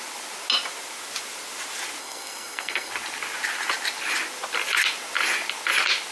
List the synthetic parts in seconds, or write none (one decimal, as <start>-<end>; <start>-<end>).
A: 2.0-2.9